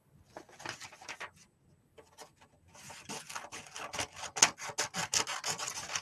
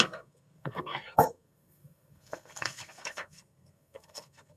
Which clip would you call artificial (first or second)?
second